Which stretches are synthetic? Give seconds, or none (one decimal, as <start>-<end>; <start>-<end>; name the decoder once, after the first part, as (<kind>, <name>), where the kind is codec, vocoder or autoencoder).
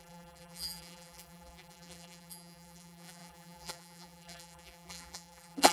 0.0-5.7 (vocoder, BigVGAN v2)